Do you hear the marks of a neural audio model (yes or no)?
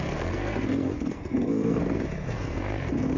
yes